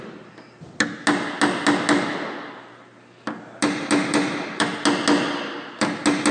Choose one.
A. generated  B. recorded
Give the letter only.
B